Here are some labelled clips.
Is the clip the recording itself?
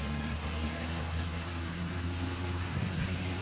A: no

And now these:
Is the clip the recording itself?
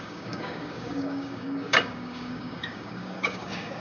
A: no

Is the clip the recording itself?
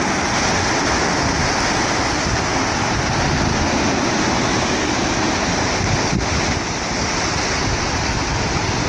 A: yes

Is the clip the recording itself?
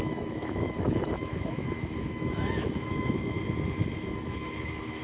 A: no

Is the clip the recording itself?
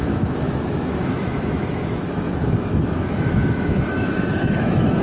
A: no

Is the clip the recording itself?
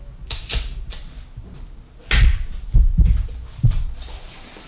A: yes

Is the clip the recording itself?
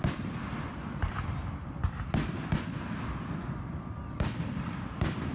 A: no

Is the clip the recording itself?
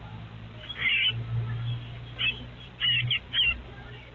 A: yes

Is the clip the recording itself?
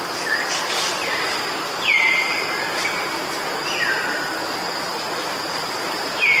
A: yes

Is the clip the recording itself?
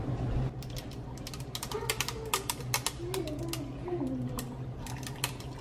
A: yes